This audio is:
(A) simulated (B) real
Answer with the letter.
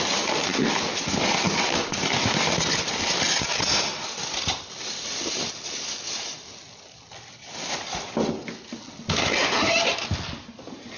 B